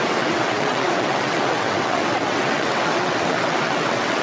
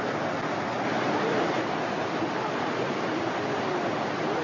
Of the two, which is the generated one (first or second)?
first